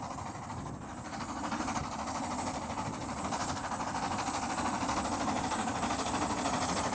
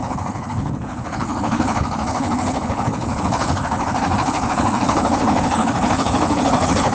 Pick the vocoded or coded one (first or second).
second